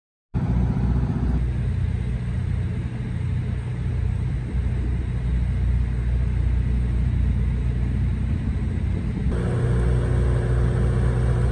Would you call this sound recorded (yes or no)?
yes